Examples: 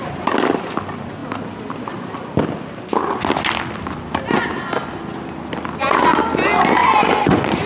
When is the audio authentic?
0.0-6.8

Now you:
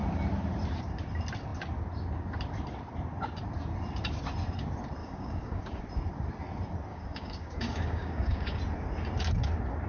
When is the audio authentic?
0.0-5.0; 5.8-6.9; 8.6-9.9

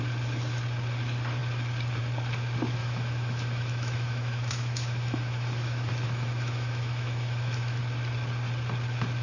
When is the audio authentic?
0.0-2.8; 7.8-9.2

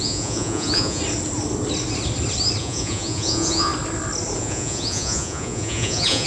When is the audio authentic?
1.0-2.6; 3.7-4.4

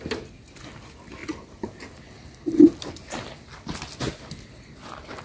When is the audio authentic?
0.0-5.2

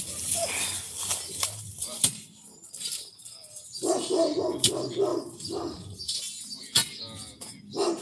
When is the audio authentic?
0.0-1.7; 3.1-5.1; 6.2-8.0